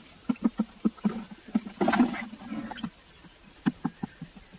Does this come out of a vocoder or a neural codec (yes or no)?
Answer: no